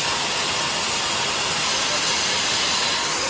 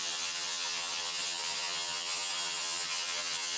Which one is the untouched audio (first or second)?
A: first